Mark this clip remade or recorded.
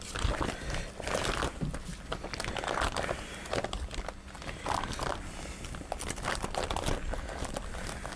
recorded